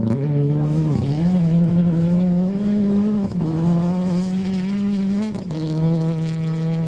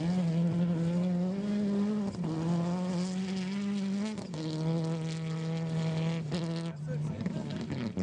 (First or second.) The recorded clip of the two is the second